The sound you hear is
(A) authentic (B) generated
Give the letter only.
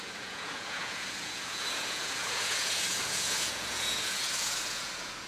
B